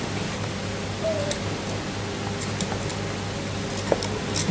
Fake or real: real